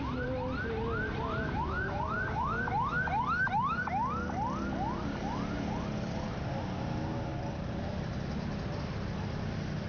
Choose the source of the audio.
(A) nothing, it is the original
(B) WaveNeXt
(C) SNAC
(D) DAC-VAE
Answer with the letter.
A